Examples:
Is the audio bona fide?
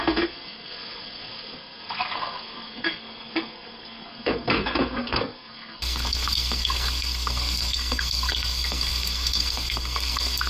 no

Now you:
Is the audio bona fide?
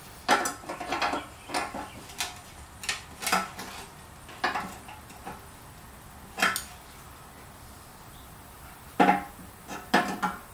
yes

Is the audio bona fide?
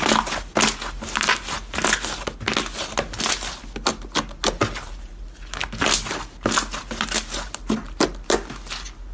yes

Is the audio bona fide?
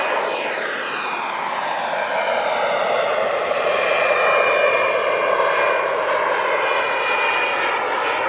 yes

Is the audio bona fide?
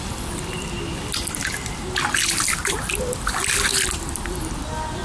yes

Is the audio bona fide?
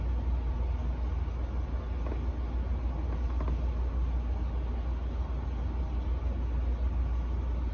yes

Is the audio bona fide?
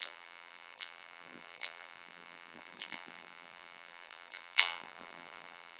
no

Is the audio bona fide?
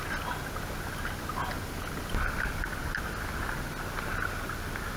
yes